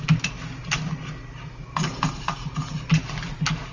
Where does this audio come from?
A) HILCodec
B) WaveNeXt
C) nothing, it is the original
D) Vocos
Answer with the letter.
C